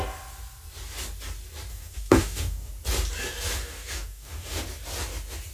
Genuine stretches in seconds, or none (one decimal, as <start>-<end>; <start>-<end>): 0.0-1.7; 2.7-3.6; 4.6-5.5